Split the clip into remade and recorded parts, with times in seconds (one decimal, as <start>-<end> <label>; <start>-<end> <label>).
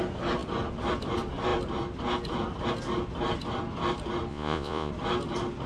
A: 0.0-4.3 recorded; 4.3-4.9 remade; 4.9-5.7 recorded